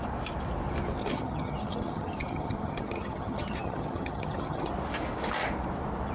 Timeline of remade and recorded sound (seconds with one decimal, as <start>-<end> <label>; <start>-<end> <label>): 0.0-1.0 recorded; 1.0-4.7 remade; 4.7-6.1 recorded